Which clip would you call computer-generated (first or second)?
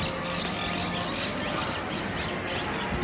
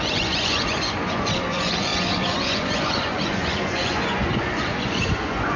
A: second